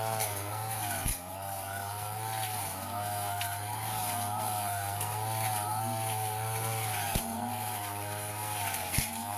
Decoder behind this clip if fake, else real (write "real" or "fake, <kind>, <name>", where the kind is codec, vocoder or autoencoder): fake, codec, SNAC